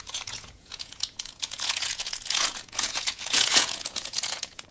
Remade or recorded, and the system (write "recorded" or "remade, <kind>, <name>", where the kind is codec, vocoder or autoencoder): remade, vocoder, Vocos